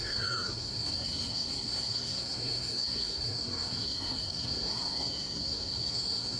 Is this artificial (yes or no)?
yes